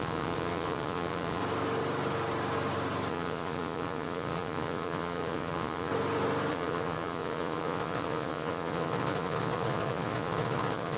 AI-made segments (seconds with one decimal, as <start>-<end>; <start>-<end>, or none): 0.0-1.4; 3.1-5.9; 6.5-11.0